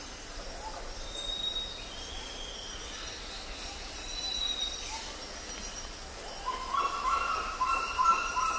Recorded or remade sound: recorded